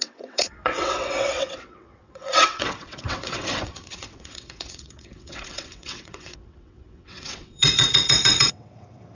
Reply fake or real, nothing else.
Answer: fake